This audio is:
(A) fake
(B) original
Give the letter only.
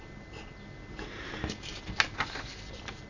B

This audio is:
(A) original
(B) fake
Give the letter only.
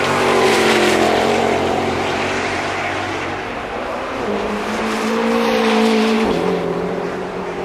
B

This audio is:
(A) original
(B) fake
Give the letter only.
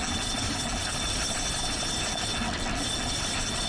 A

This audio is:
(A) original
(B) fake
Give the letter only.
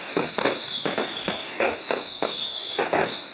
B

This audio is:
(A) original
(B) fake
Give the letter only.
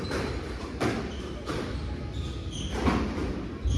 A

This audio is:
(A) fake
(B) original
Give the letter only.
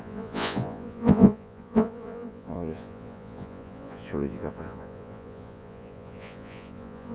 A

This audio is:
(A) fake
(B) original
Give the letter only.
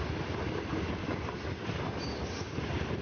B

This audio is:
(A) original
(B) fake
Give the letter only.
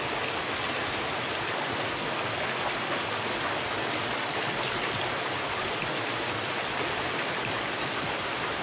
A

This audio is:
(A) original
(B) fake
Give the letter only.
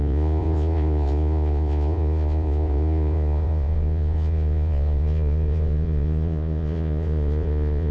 B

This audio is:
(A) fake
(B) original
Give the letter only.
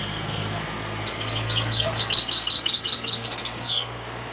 A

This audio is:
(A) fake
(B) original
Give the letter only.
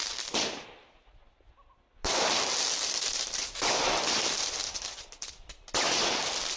B